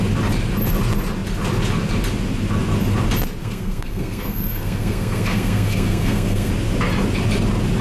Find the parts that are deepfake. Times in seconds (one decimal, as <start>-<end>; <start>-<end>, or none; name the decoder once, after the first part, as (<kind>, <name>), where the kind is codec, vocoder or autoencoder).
3.4-6.5 (codec, SNAC)